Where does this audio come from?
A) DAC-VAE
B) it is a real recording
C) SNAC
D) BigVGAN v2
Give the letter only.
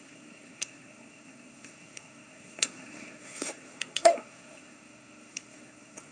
C